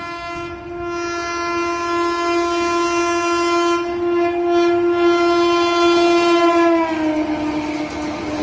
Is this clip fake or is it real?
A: real